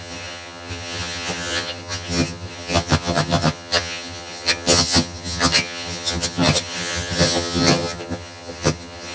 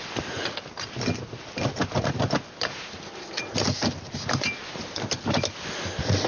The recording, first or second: second